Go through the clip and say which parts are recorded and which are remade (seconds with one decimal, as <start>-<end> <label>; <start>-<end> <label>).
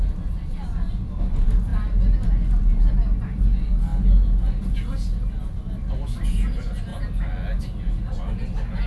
0.0-8.9 recorded